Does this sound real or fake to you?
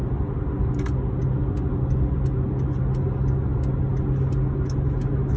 real